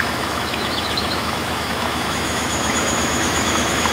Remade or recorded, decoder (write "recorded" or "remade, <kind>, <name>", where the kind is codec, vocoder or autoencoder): remade, autoencoder, DAC-VAE